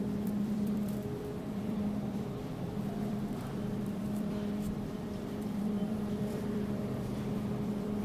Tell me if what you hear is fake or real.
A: fake